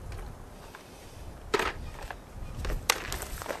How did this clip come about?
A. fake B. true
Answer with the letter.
B